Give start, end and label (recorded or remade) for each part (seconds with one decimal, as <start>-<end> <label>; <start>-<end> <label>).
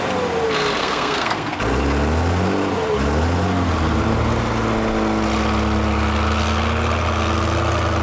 0.0-0.8 recorded; 0.8-1.6 remade; 1.6-8.0 recorded